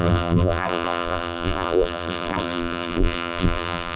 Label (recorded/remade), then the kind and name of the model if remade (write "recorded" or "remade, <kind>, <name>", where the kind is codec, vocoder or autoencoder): remade, vocoder, BigVGAN v2